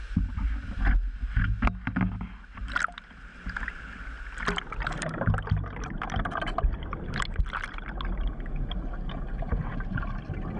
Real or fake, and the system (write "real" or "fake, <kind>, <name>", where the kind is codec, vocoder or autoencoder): real